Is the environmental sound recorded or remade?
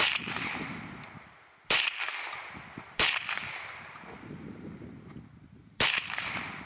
remade